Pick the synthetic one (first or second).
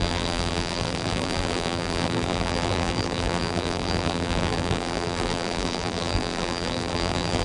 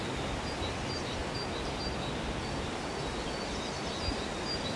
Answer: first